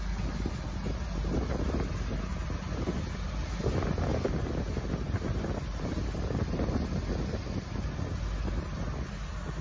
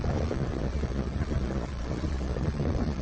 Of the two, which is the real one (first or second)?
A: first